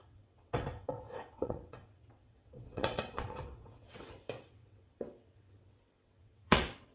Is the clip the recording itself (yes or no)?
no